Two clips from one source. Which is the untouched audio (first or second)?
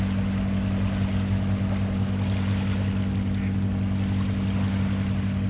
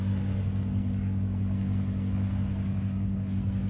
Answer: first